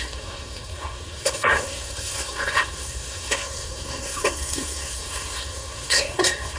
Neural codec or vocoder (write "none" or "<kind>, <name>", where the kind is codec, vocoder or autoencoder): codec, SNAC